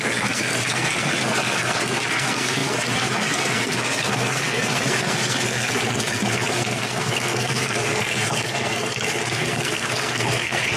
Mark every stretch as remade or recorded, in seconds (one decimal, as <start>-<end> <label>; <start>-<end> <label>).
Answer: 0.0-10.8 remade